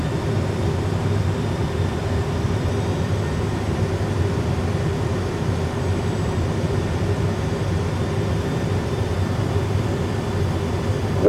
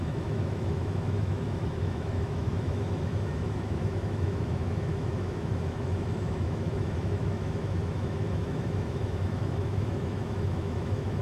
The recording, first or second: first